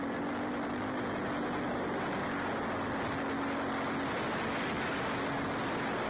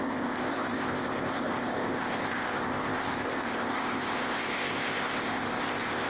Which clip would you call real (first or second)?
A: first